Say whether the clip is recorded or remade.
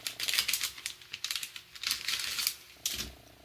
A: recorded